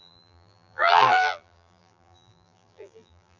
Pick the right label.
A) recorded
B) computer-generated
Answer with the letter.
B